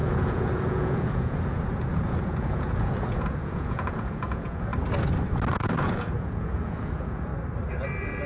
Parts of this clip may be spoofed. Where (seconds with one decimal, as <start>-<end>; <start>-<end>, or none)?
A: 0.0-4.7; 5.5-7.3